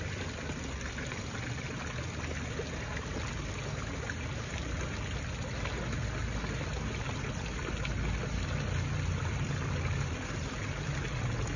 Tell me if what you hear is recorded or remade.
recorded